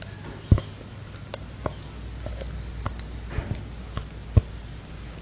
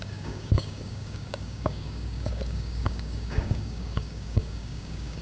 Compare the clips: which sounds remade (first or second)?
second